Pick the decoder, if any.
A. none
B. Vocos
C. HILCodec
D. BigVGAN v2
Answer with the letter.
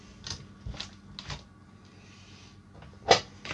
A